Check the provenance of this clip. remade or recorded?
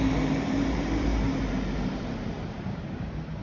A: remade